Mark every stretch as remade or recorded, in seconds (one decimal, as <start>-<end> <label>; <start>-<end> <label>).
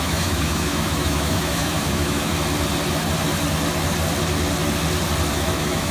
0.0-2.3 remade; 2.3-5.3 recorded; 5.3-5.9 remade